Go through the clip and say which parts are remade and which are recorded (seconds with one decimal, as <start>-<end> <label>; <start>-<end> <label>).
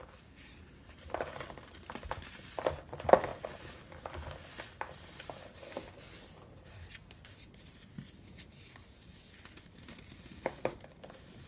0.0-11.5 recorded